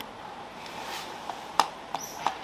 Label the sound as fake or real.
fake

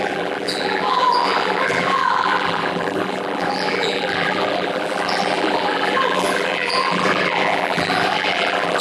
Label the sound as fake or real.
fake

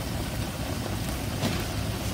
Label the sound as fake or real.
real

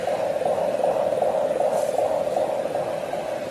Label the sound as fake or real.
real